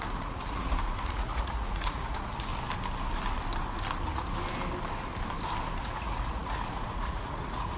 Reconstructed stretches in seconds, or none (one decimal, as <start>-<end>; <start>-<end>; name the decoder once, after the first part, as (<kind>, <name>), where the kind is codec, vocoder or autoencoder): 0.0-2.5 (vocoder, Vocos); 5.8-7.8